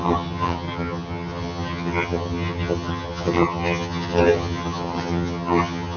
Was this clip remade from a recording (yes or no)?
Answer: yes